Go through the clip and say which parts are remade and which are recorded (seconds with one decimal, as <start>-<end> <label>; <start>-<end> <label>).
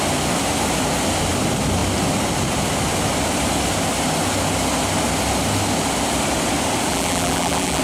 0.0-6.9 recorded; 6.9-7.8 remade